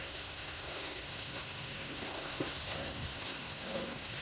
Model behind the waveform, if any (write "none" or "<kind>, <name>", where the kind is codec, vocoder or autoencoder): codec, SNAC